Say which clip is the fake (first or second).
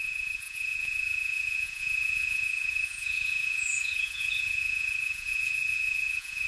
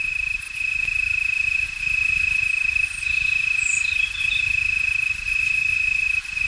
first